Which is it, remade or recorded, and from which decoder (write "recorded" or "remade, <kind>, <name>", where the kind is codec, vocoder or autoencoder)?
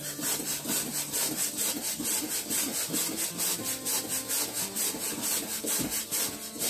recorded